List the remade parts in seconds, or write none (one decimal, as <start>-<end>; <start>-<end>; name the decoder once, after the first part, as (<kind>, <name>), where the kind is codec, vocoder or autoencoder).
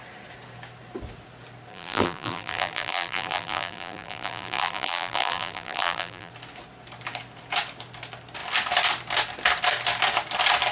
1.7-6.3 (vocoder, BigVGAN v2)